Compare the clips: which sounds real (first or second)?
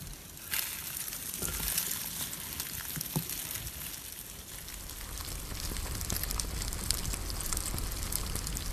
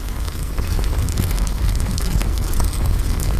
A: first